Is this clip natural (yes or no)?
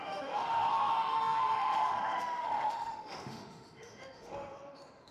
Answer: no